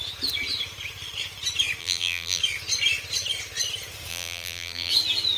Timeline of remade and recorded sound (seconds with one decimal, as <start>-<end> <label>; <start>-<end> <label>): 0.0-1.8 recorded; 1.8-2.4 remade; 2.4-4.1 recorded; 4.1-4.9 remade; 4.9-5.4 recorded